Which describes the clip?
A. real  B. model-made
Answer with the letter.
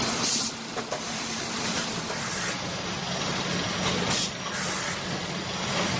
A